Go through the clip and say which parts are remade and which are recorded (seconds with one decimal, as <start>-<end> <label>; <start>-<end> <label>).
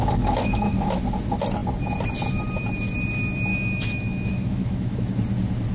0.0-1.0 remade; 1.0-3.5 recorded; 3.5-5.0 remade; 5.0-5.7 recorded